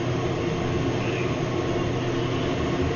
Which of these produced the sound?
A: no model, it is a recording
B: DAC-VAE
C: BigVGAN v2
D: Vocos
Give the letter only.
A